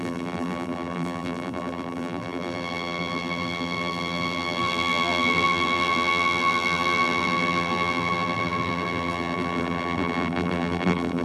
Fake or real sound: fake